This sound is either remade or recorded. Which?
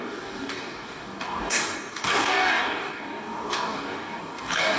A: remade